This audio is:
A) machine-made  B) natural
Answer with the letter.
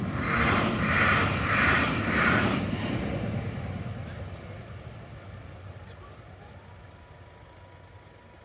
B